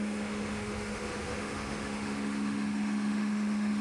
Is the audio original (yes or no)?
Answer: no